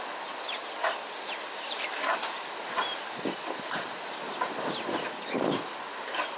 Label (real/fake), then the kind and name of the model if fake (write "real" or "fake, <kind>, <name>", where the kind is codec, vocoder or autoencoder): real